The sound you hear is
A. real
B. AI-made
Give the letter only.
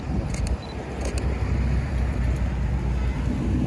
A